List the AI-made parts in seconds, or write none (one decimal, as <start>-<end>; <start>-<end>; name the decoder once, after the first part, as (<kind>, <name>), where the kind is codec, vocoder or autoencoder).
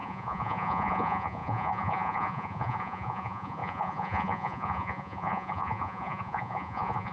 0.0-7.1 (vocoder, Vocos)